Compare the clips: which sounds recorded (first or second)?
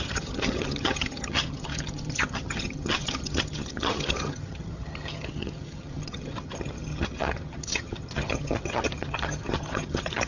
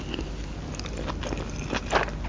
second